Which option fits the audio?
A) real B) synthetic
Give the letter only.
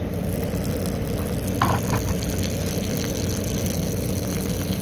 A